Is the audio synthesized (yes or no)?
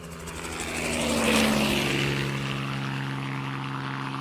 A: no